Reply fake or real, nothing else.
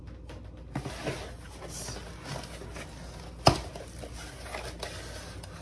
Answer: real